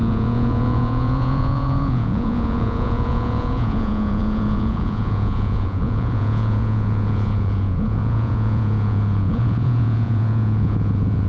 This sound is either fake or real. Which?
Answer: fake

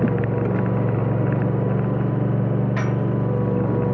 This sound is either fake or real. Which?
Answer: real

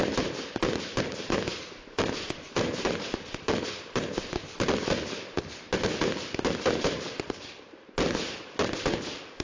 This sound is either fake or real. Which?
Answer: real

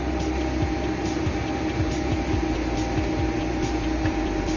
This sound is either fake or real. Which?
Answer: real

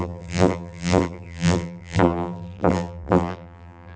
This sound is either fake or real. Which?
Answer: fake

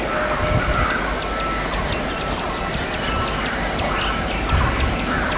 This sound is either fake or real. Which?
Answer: real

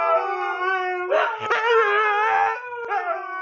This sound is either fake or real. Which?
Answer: real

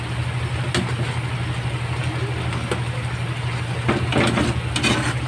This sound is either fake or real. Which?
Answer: real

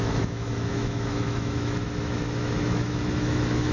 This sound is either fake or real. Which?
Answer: fake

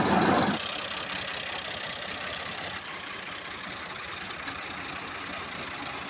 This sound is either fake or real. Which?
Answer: real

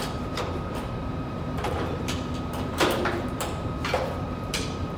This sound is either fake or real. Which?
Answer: fake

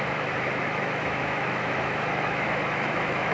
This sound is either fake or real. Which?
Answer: fake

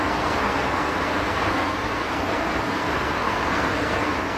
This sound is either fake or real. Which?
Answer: fake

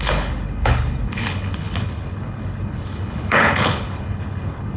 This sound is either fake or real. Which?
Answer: fake